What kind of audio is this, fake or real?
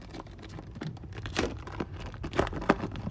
fake